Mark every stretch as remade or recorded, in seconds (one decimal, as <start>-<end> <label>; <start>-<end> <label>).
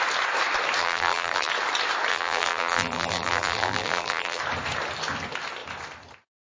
0.0-0.8 recorded; 0.8-1.5 remade; 1.5-2.1 recorded; 2.1-4.4 remade; 4.4-6.4 recorded